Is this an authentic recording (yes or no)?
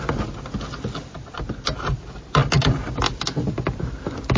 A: yes